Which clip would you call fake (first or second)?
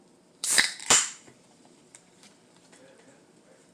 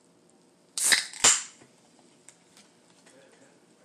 first